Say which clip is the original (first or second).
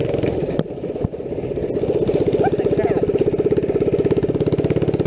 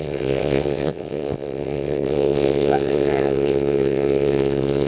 first